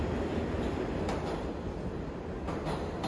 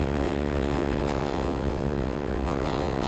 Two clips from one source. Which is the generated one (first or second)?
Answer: second